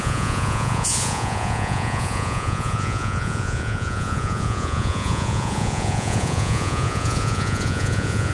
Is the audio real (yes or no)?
no